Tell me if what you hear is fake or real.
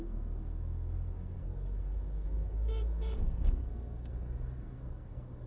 fake